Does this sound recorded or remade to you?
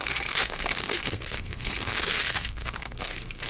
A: remade